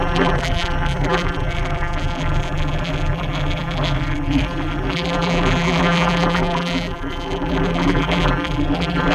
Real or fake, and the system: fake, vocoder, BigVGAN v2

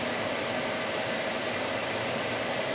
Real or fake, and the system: real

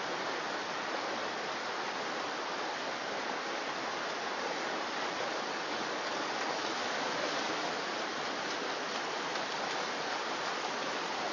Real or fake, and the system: real